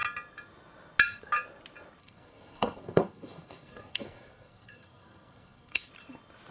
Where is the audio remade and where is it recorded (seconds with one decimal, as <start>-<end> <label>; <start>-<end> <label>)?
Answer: 0.0-2.0 recorded; 2.0-5.9 remade; 5.9-6.5 recorded